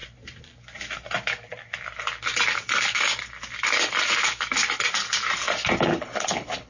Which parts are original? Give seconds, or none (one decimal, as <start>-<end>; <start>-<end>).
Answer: 0.0-5.9